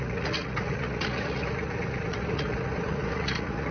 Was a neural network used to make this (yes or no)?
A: yes